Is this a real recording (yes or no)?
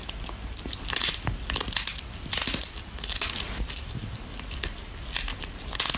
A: yes